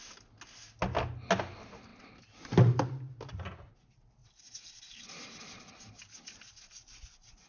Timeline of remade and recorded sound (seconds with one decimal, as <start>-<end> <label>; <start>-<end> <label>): 0.0-7.5 recorded